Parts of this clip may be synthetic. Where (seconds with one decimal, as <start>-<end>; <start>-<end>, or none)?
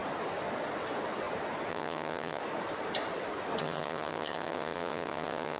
1.7-2.4; 3.6-5.6